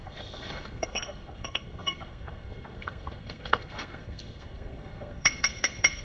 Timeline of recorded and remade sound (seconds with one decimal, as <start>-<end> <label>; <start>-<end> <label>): 0.0-6.0 remade